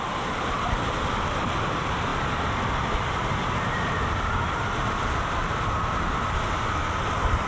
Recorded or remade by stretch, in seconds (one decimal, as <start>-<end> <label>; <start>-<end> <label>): 0.0-7.5 recorded